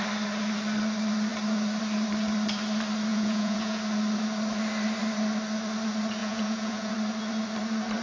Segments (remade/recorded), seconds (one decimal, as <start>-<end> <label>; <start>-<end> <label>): 0.0-3.1 recorded; 3.1-3.8 remade; 3.8-6.2 recorded; 6.2-6.9 remade; 6.9-8.0 recorded